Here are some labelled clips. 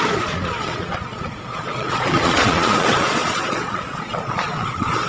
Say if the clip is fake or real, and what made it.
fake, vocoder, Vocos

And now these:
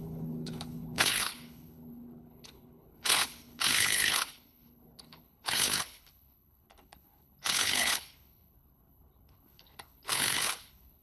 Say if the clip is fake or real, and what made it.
fake, codec, HILCodec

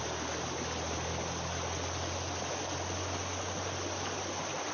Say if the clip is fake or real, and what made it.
real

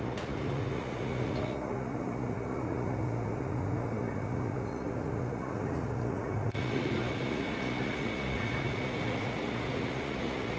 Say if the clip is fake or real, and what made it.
fake, vocoder, Vocos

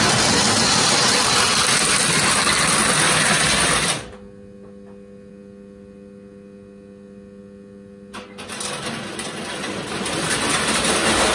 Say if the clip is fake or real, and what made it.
real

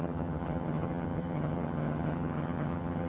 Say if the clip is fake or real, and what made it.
fake, vocoder, HiFi-GAN